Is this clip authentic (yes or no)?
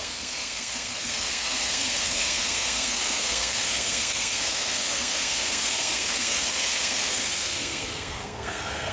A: no